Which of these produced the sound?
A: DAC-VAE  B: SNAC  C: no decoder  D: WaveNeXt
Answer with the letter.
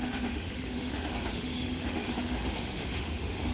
A